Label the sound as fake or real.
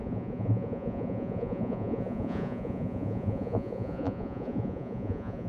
fake